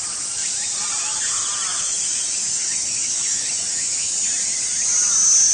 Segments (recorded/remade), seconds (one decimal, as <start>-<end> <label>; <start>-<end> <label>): 0.0-1.7 recorded; 1.7-4.1 remade; 4.1-5.5 recorded